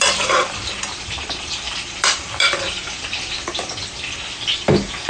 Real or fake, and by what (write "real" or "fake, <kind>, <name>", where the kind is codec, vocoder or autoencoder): fake, vocoder, BigVGAN v2